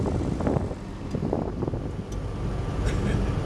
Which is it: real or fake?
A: real